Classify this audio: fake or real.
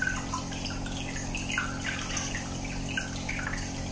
real